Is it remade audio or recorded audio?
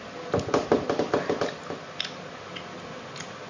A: recorded